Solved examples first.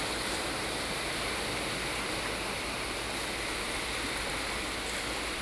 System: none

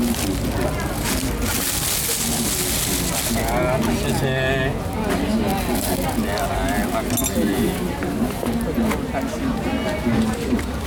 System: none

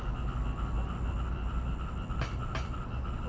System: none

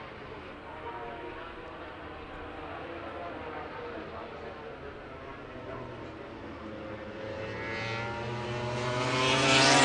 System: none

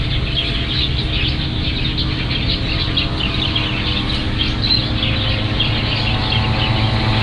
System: none